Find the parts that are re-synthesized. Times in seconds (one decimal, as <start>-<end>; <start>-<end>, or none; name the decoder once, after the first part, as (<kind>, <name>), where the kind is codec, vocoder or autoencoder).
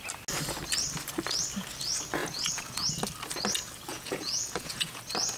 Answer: 2.2-2.9 (vocoder, Vocos); 3.9-5.0